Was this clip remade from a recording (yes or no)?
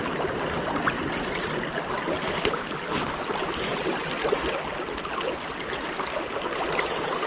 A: no